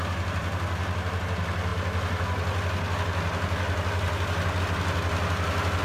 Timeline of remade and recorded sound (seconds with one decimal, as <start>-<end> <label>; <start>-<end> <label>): 0.0-5.8 recorded